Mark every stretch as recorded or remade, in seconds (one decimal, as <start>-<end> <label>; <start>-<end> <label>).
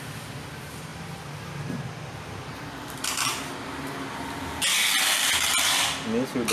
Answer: 0.0-6.5 recorded